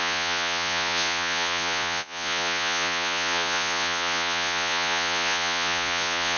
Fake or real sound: fake